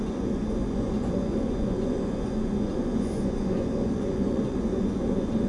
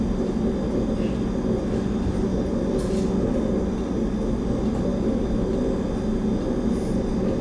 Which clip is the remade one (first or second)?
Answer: first